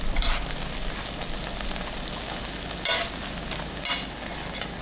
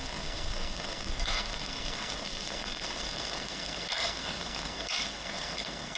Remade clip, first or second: second